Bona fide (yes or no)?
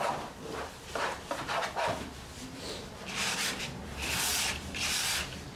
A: no